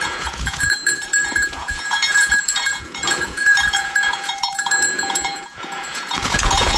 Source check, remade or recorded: remade